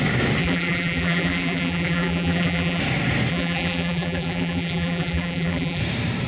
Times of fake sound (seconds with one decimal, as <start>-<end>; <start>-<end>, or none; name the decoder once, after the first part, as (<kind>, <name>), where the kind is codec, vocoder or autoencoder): 0.4-2.8 (vocoder, BigVGAN v2); 3.3-5.8